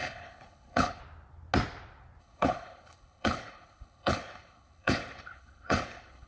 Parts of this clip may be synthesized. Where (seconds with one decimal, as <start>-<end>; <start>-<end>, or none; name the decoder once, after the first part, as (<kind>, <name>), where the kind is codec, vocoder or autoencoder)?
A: 0.0-1.0 (codec, HILCodec); 2.2-6.3